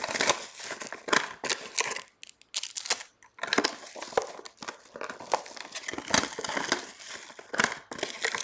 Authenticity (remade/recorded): recorded